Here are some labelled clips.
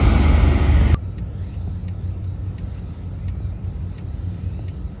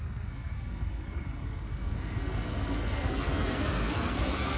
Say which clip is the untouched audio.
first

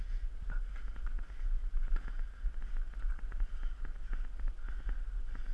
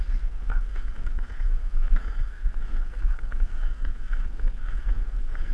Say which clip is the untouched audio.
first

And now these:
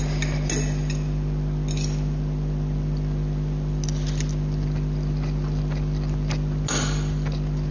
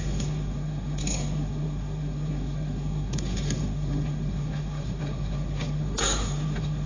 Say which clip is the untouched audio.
first